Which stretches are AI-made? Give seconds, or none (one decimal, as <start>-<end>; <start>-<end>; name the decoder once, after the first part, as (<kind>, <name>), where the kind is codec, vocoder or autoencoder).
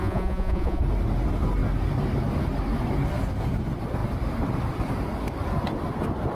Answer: 0.0-0.8 (vocoder, Vocos)